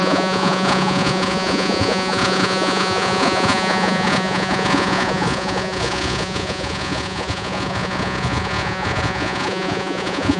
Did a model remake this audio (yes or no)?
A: yes